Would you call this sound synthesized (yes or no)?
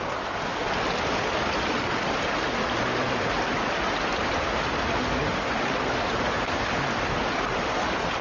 no